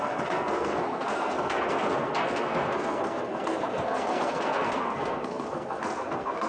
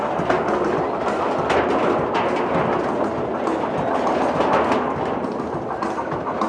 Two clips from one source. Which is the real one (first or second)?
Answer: second